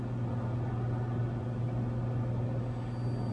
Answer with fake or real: real